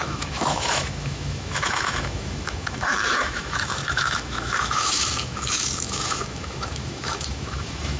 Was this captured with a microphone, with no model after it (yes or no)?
no